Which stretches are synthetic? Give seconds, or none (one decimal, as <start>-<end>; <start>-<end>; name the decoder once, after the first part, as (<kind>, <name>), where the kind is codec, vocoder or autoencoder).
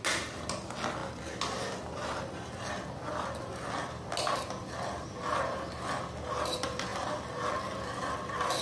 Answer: none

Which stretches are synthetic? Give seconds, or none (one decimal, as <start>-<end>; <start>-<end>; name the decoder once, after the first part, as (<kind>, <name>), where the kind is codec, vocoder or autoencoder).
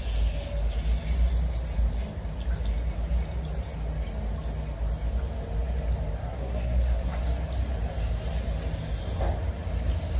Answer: 6.2-7.2 (codec, SNAC)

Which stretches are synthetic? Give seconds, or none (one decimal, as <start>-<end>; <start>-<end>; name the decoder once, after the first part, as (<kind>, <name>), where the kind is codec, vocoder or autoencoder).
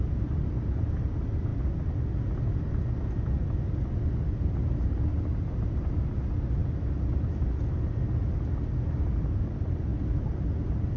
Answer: none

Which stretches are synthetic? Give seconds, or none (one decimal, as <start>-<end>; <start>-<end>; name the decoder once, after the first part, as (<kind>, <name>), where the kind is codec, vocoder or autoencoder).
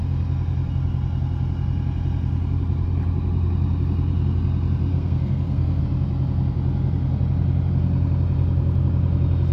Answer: 4.9-5.8 (codec, SNAC)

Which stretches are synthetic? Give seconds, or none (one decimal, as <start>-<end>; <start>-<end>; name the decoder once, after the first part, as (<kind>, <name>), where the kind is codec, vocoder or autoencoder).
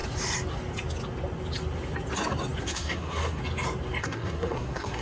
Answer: 2.6-3.4 (codec, SNAC); 4.0-5.0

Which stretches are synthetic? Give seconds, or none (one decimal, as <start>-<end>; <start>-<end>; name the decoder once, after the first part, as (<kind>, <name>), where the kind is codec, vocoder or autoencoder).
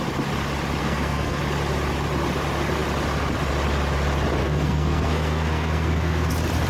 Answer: 0.8-1.4 (codec, SNAC); 4.4-6.3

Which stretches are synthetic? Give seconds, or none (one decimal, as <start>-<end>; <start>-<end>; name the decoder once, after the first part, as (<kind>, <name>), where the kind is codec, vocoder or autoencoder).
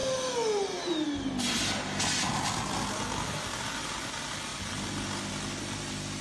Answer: none